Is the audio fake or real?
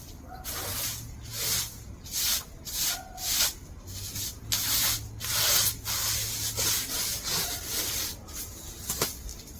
real